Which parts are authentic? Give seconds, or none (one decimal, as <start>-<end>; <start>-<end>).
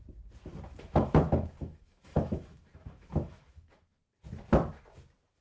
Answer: 0.0-0.7; 3.9-5.4